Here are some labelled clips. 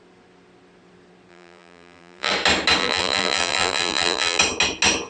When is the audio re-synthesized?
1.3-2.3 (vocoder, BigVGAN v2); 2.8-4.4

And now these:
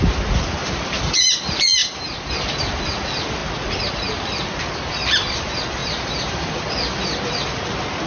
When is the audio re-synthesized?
0.6-1.3 (vocoder, BigVGAN v2); 1.8-2.3; 5.8-6.7

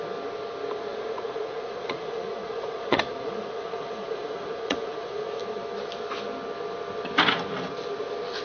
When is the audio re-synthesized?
0.9-5.4 (vocoder, Vocos)

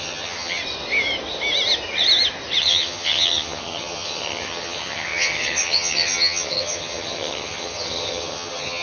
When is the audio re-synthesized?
0.0-0.6 (vocoder, HiFi-GAN); 2.6-8.8

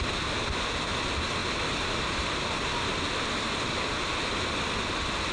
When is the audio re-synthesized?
none

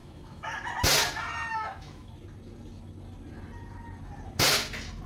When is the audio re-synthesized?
0.0-0.7 (autoencoder, DAC-VAE); 1.5-2.1

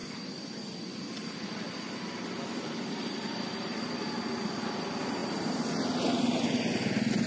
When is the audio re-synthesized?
0.0-3.8 (vocoder, BigVGAN v2)